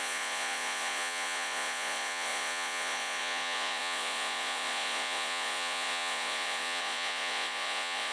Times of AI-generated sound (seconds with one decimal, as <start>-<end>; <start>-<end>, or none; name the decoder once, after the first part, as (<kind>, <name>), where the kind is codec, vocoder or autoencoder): 0.0-8.1 (vocoder, Vocos)